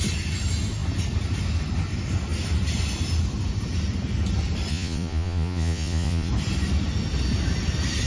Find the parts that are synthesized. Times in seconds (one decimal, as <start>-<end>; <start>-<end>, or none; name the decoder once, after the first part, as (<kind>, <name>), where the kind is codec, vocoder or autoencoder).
4.7-6.3 (vocoder, Vocos)